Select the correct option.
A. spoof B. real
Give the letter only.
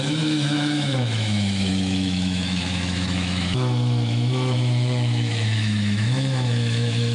A